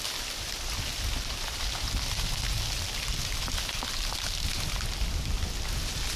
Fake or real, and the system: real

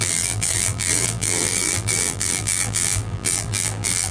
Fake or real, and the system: fake, vocoder, BigVGAN v2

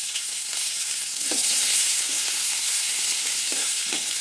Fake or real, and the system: fake, codec, SNAC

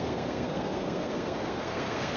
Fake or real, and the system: fake, codec, SNAC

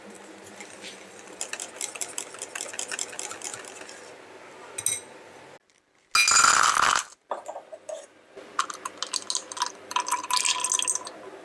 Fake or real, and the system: real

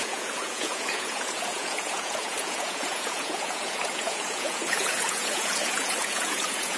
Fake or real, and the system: fake, vocoder, Vocos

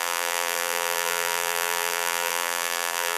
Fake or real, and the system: fake, vocoder, BigVGAN v2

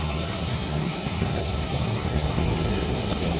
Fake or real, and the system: fake, codec, SNAC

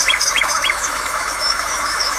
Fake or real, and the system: fake, autoencoder, DAC-VAE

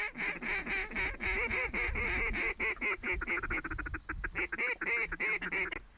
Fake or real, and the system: real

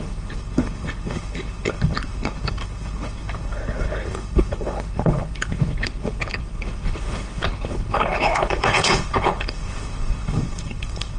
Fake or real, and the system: fake, codec, HILCodec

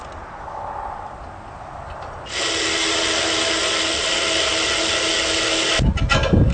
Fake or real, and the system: real